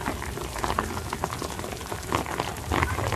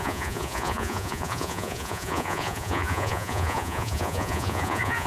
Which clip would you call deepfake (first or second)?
second